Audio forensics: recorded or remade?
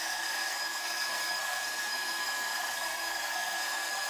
remade